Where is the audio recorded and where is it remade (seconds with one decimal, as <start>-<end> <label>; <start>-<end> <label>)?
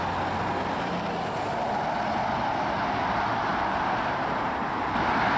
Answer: 0.0-5.4 recorded